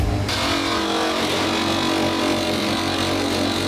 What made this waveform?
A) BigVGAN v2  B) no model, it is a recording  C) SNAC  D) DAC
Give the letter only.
B